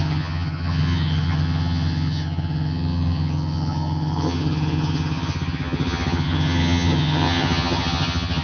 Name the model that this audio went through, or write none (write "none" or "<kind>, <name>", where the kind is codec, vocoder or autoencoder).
vocoder, HiFi-GAN